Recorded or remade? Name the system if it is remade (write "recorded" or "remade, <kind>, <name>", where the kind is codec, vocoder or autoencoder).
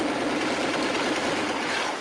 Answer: recorded